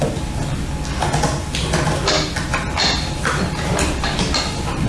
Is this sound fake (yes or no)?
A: no